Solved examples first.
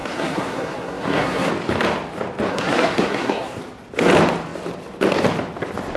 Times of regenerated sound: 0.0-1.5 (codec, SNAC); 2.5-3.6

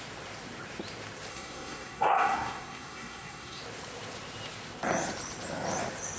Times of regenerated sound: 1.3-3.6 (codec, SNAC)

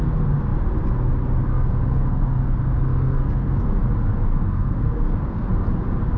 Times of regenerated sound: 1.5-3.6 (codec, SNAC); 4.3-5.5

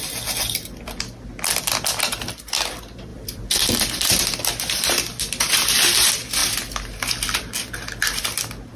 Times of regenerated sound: 3.1-4.1 (vocoder, BigVGAN v2)